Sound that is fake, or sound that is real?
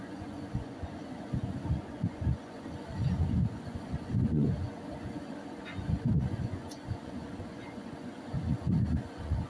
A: fake